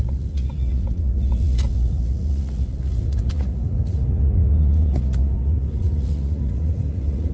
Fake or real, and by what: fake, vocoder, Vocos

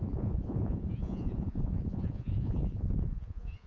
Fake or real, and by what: fake, vocoder, Vocos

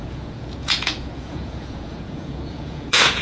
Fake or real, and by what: fake, vocoder, Vocos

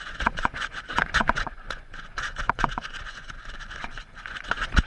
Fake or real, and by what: fake, vocoder, Vocos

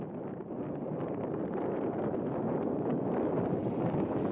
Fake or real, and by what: real